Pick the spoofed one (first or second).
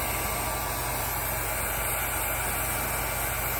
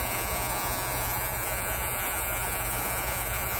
second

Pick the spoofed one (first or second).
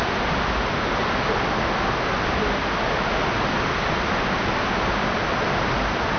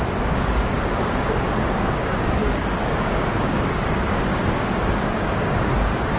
second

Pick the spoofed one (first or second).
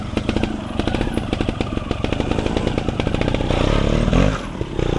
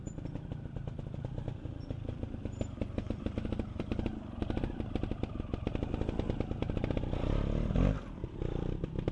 second